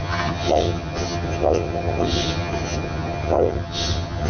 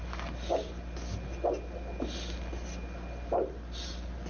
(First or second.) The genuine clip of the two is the second